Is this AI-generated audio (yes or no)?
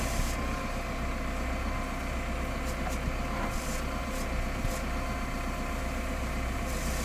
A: no